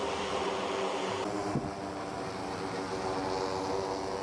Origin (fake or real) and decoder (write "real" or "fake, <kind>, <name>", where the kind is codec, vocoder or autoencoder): real